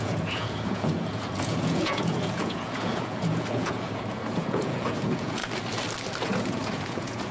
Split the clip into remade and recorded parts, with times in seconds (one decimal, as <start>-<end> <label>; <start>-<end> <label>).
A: 0.0-5.4 remade; 5.4-6.2 recorded; 6.2-7.3 remade